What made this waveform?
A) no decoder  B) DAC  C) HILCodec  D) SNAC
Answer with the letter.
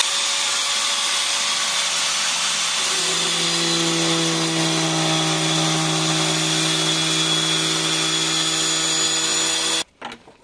A